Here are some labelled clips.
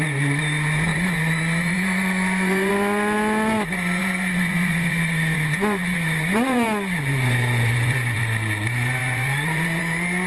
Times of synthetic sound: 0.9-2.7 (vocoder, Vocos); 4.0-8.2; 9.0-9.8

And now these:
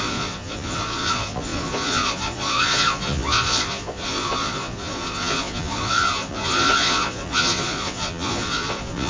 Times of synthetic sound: 0.0-9.1 (vocoder, Vocos)

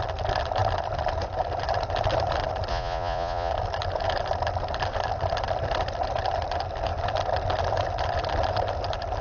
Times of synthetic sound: 2.7-3.5 (vocoder, Vocos)

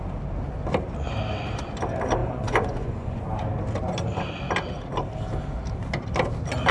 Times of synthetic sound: 2.2-3.2 (vocoder, Vocos)

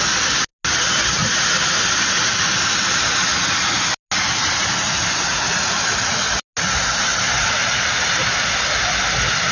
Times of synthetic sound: none